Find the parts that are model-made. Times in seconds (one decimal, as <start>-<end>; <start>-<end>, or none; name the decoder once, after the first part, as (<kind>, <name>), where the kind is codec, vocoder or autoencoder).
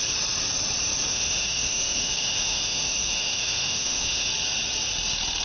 1.1-4.3 (autoencoder, DAC-VAE)